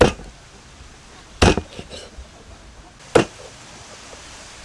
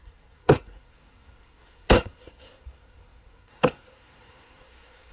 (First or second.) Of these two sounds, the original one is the first